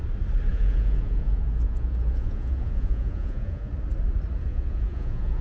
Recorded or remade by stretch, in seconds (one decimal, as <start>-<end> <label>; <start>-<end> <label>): 0.0-0.5 recorded; 0.5-3.7 remade; 3.7-4.5 recorded; 4.5-5.4 remade